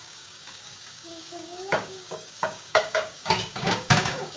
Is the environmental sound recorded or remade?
remade